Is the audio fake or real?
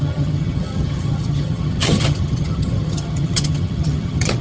fake